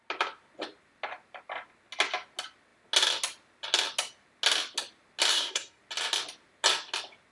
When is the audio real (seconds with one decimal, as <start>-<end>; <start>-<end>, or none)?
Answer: 0.0-5.3; 5.8-7.3